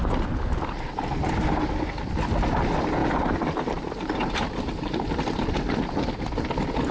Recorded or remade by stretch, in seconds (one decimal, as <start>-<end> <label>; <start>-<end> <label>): 0.0-3.0 recorded; 3.0-5.4 remade; 5.4-6.9 recorded